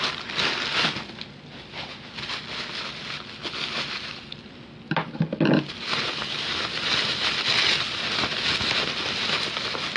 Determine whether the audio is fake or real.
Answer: real